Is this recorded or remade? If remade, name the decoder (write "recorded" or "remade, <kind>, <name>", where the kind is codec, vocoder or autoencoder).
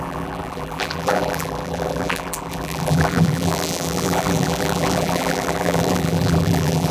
remade, vocoder, BigVGAN v2